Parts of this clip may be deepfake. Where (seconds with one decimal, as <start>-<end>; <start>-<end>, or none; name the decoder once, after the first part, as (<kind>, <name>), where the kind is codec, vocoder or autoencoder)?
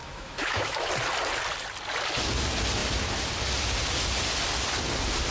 0.0-0.9 (autoencoder, DAC-VAE)